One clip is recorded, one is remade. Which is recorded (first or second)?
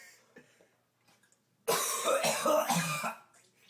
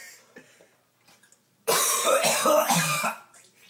first